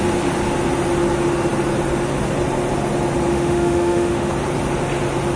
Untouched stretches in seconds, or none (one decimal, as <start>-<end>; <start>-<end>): 0.0-3.3; 4.3-5.4